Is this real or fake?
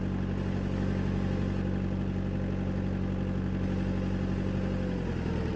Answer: real